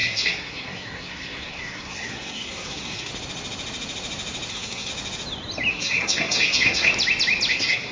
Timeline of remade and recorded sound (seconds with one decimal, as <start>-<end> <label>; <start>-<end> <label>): 0.0-3.1 remade; 3.1-4.5 recorded; 4.5-4.9 remade; 4.9-5.7 recorded; 5.7-6.9 remade; 6.9-7.5 recorded; 7.5-7.9 remade